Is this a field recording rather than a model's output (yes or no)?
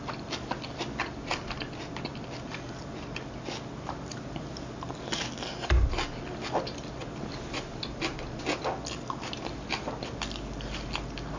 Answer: yes